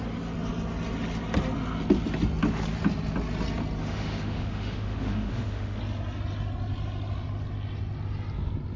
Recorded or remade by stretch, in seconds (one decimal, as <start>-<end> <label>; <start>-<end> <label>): 0.0-3.8 recorded; 3.8-5.8 remade; 5.8-8.8 recorded